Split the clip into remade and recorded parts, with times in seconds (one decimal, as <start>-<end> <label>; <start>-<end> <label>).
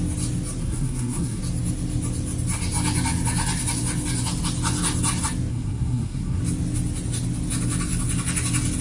0.0-0.6 recorded; 0.6-1.4 remade; 1.4-5.5 recorded; 5.5-6.4 remade; 6.4-8.8 recorded